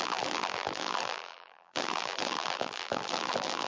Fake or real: fake